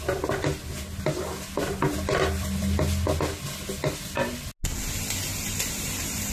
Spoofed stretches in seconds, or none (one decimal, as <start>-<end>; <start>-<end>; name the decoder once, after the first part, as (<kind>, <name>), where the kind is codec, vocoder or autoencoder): 5.3-6.3 (vocoder, BigVGAN v2)